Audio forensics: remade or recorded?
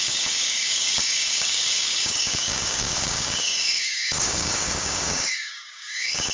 remade